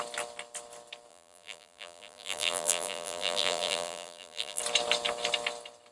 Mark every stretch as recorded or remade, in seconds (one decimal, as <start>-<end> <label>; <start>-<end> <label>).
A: 0.0-1.1 recorded; 1.1-4.6 remade; 4.6-5.9 recorded